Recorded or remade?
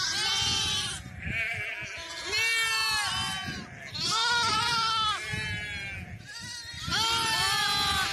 recorded